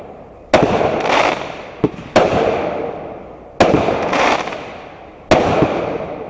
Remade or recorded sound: recorded